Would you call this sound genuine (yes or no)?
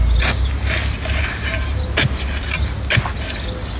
yes